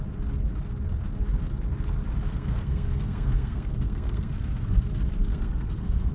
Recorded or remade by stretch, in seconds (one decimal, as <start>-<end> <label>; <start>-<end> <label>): 0.0-2.3 recorded; 2.3-4.8 remade; 4.8-5.3 recorded; 5.3-6.1 remade